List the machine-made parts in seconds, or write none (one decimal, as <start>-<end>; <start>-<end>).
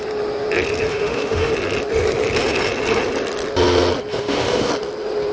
0.9-1.5; 4.1-4.7